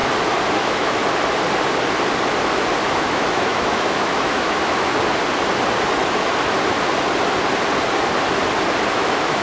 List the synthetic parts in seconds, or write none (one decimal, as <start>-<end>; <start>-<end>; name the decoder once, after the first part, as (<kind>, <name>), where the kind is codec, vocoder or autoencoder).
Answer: 0.6-1.0 (autoencoder, DAC-VAE); 2.9-4.9; 8.9-9.4